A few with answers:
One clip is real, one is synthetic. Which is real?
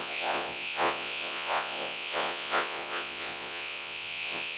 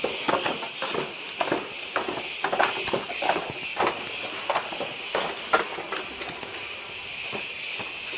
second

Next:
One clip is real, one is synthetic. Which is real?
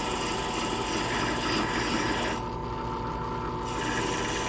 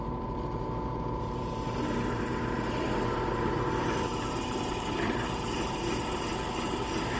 first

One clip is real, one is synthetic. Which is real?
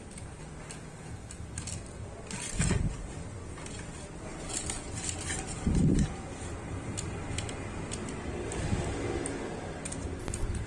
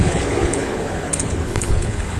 first